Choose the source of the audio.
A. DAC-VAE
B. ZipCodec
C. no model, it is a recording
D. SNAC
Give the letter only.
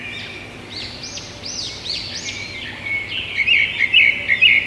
C